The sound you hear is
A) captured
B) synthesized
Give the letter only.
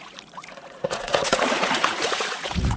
B